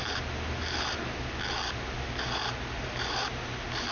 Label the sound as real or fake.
real